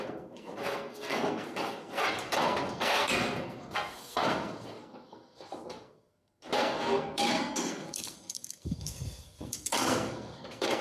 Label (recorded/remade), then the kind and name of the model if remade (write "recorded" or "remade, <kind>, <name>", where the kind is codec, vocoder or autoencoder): remade, codec, SNAC